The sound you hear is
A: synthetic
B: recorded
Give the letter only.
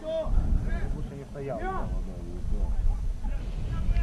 B